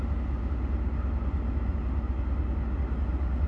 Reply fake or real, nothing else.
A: real